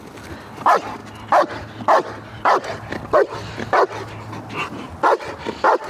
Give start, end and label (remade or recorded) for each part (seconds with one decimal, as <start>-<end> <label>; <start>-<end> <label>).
0.0-4.6 recorded; 4.6-5.3 remade; 5.3-5.9 recorded

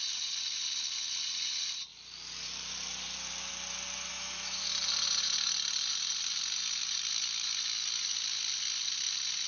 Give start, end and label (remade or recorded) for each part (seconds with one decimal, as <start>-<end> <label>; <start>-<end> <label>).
0.0-4.1 recorded; 4.1-4.6 remade; 4.6-9.5 recorded

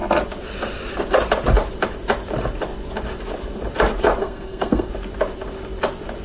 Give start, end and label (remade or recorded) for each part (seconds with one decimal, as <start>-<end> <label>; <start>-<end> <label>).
0.0-4.2 recorded; 4.2-4.9 remade; 4.9-6.2 recorded